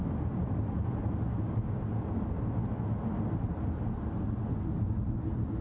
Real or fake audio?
real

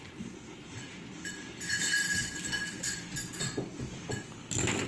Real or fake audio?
real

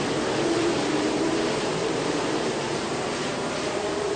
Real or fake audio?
fake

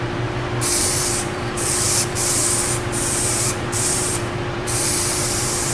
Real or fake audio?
fake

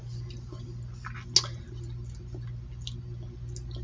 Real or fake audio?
real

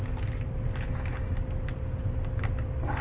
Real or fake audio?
real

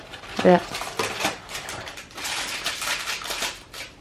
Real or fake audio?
fake